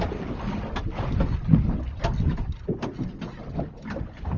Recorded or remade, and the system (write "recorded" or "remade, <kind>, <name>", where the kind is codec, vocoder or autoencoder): recorded